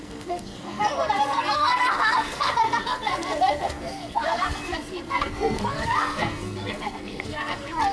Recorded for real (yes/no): no